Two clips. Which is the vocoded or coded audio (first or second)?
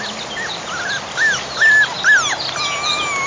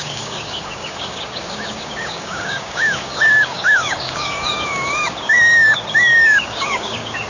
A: second